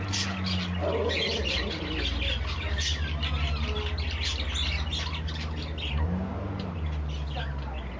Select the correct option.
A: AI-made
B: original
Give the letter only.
B